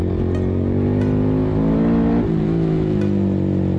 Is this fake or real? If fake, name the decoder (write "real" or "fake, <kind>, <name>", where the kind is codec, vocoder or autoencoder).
real